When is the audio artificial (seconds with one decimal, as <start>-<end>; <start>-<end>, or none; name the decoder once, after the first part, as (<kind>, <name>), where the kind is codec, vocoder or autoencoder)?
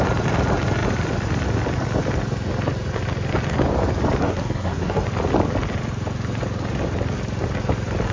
4.2-5.0 (codec, SNAC)